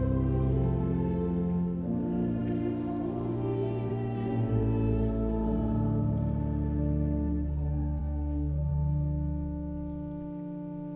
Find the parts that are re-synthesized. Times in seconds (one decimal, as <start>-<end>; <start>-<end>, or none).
none